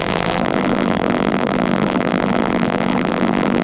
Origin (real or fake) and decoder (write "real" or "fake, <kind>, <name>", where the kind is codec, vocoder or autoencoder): fake, vocoder, BigVGAN v2